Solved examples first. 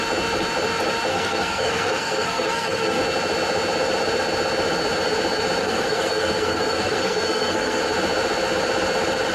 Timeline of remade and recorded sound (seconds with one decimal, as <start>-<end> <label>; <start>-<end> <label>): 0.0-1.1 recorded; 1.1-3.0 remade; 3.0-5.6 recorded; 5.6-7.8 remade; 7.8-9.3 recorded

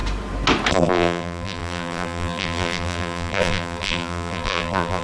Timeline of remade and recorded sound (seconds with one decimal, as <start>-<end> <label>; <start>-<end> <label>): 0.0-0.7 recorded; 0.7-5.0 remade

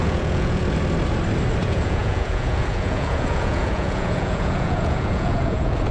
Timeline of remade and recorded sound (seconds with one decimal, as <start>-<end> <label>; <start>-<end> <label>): 0.0-0.6 remade; 0.6-1.6 recorded; 1.6-5.9 remade

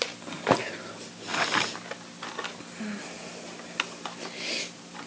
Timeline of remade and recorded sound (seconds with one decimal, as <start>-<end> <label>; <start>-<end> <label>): 0.0-5.1 recorded

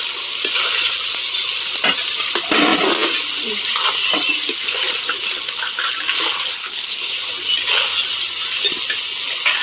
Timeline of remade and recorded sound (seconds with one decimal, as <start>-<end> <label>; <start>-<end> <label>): 0.0-6.5 recorded; 6.5-7.1 remade; 7.1-9.6 recorded

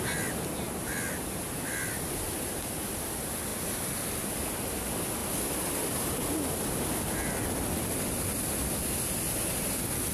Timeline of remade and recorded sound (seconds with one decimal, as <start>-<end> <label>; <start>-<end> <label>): 0.0-10.1 recorded

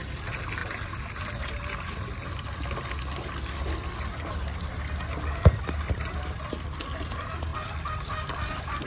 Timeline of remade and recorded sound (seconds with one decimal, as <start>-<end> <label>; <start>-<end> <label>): 0.0-8.9 recorded

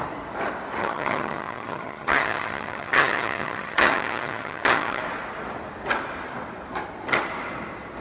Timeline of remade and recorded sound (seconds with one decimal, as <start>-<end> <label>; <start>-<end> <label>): 0.0-0.8 recorded; 0.8-5.0 remade; 5.0-8.0 recorded